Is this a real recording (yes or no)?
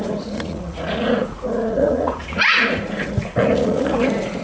no